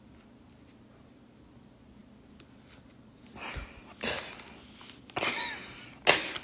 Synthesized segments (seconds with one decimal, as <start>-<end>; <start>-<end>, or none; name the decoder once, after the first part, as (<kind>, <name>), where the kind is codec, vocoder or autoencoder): none